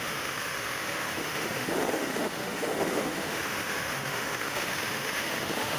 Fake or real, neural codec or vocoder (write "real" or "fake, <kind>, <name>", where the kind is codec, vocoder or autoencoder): fake, autoencoder, DAC-VAE